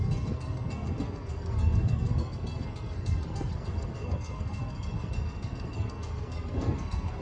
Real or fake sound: fake